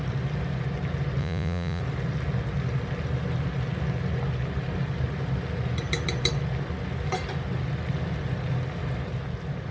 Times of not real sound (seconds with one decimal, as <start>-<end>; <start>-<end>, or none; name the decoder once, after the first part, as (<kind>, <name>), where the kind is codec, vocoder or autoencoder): 1.2-1.8 (vocoder, Vocos)